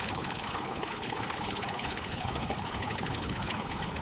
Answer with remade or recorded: remade